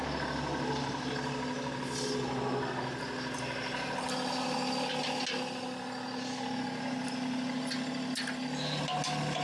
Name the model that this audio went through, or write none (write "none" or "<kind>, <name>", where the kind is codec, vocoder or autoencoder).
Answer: none